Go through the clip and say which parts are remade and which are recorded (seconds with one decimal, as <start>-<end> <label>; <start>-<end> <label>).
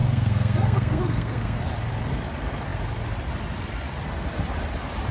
0.0-1.6 remade; 1.6-5.1 recorded